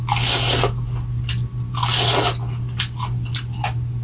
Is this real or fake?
real